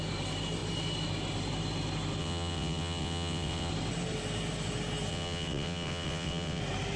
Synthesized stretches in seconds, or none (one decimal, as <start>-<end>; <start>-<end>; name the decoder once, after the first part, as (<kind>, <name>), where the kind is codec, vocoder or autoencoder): 2.2-3.7 (vocoder, WaveNeXt); 5.1-6.6